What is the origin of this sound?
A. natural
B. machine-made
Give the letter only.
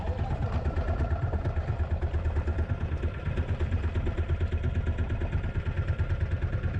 A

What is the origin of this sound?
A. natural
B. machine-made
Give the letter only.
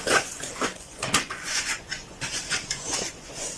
B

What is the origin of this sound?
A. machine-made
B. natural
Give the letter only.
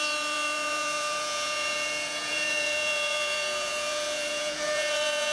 A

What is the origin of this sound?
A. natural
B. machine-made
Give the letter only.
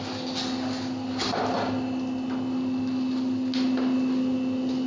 A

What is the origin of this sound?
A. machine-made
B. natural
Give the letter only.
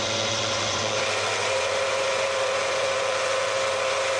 A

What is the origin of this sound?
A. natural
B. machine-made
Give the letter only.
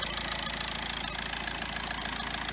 A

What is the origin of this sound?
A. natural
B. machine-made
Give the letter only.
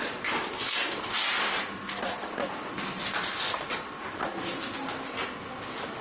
A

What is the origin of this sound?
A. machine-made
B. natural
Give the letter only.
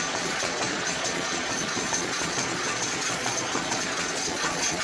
A